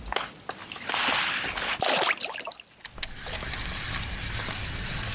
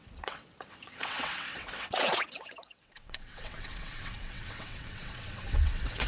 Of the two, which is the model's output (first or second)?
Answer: second